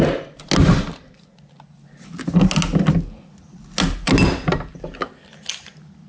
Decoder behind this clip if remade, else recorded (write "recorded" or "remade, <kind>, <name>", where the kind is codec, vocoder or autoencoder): recorded